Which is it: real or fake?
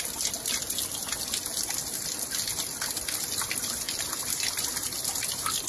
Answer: real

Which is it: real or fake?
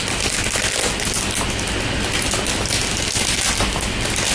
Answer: real